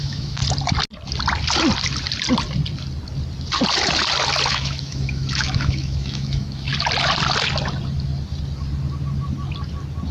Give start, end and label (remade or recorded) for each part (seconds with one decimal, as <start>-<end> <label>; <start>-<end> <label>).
0.0-0.4 remade; 0.4-4.5 recorded; 4.5-6.7 remade; 6.7-10.1 recorded